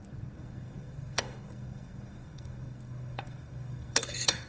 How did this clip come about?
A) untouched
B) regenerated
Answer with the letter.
B